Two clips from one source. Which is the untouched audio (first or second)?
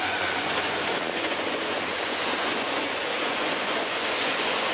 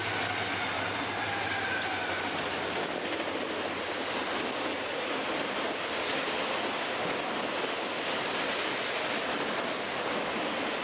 second